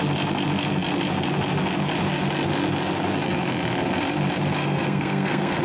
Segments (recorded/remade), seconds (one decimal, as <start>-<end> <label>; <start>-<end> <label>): 0.0-4.6 recorded; 4.6-5.6 remade